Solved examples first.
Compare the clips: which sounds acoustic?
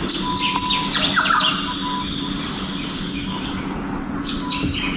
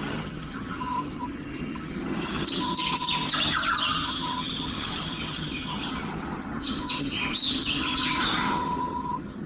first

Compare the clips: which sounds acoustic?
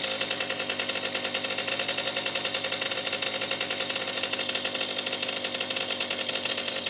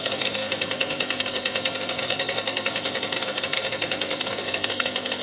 first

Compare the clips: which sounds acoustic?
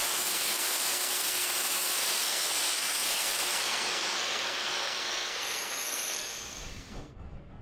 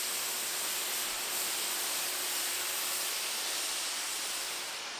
second